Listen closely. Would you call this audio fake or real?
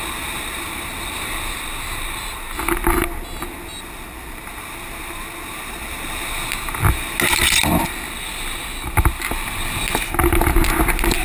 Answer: real